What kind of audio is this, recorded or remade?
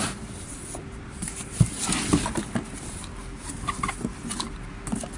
recorded